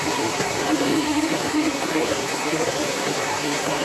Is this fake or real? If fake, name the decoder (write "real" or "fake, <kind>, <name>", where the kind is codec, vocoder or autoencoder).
fake, codec, SNAC